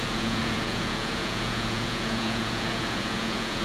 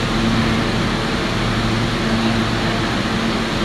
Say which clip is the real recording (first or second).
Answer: second